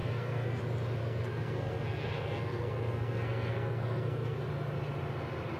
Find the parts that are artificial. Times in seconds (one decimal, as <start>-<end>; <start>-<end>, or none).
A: 0.0-0.6; 1.0-4.4